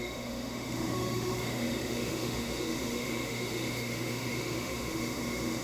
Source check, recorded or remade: remade